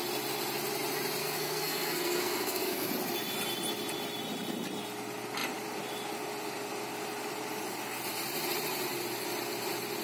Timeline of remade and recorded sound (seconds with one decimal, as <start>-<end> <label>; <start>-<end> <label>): 0.0-1.2 recorded; 1.2-2.9 remade; 2.9-10.0 recorded